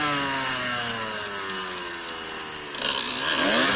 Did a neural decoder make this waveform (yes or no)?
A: no